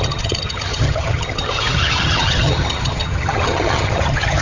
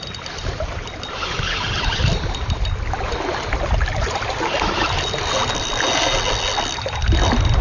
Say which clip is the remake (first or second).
first